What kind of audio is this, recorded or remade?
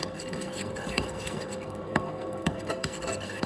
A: remade